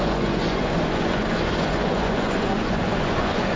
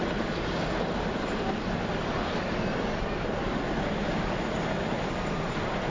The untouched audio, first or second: second